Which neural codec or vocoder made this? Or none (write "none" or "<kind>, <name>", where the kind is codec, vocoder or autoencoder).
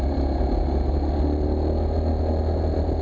none